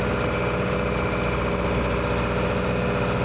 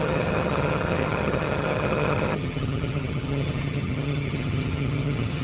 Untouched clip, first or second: first